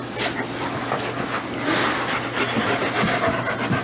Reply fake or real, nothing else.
real